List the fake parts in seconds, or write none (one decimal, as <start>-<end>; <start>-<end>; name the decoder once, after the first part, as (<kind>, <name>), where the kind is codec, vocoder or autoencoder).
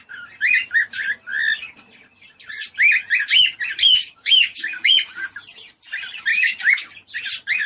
3.8-4.9 (codec, DAC); 6.3-6.9